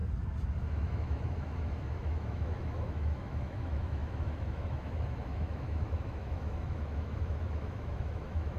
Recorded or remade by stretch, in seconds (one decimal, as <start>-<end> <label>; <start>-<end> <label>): 0.0-0.7 recorded; 0.7-8.6 remade